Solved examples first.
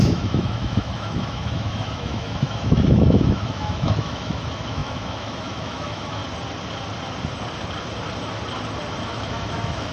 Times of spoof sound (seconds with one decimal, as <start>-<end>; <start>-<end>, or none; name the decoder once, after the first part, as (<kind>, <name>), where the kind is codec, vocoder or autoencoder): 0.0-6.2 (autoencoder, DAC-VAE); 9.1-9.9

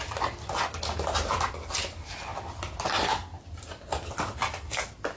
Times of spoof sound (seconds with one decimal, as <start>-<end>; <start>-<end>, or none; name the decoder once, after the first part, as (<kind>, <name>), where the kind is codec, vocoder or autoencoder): none

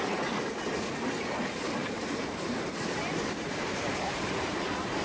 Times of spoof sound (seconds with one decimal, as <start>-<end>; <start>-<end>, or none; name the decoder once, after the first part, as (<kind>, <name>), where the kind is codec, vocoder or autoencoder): 1.8-5.0 (vocoder, BigVGAN v2)

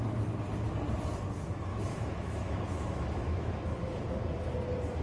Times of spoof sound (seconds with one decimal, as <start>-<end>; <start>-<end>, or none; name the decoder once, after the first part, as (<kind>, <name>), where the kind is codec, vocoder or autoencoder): 1.7-4.0 (autoencoder, DAC-VAE)

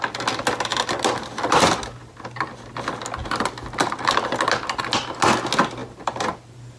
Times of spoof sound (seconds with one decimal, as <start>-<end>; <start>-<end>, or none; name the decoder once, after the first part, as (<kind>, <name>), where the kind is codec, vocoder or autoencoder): none

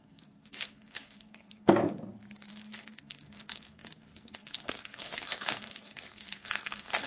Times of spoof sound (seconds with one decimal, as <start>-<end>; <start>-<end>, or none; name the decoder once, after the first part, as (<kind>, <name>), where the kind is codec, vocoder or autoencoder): 0.0-1.8 (codec, SNAC); 2.5-7.1

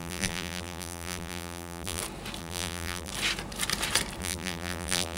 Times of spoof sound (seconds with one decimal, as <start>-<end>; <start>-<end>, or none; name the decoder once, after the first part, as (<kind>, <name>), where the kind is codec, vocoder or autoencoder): 0.0-2.0 (vocoder, BigVGAN v2); 2.4-3.1; 4.2-5.2

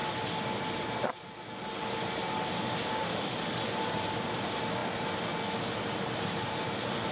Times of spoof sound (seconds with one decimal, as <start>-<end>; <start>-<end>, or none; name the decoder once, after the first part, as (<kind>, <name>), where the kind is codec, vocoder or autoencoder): 3.0-3.6 (autoencoder, DAC-VAE)